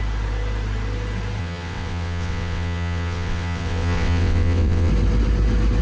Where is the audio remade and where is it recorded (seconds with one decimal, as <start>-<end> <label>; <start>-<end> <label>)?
0.0-1.4 recorded; 1.4-4.9 remade; 4.9-5.8 recorded

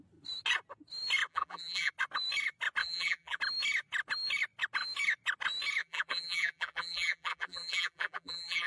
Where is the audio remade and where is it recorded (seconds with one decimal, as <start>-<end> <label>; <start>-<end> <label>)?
0.0-1.3 recorded; 1.3-1.9 remade; 1.9-2.8 recorded; 2.8-3.4 remade; 3.4-5.8 recorded; 5.8-8.7 remade

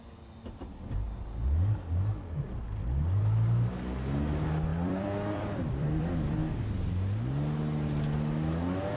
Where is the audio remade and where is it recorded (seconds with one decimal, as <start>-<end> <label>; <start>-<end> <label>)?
0.0-4.7 recorded; 4.7-6.5 remade; 6.5-9.0 recorded

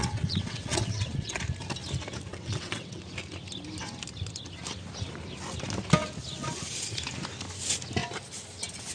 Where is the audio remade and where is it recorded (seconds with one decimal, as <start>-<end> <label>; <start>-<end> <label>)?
0.0-1.4 remade; 1.4-2.3 recorded; 2.3-3.0 remade; 3.0-8.9 recorded